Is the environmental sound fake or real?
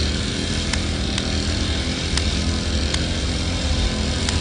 real